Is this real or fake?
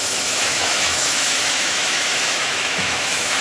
fake